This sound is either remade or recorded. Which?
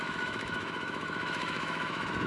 remade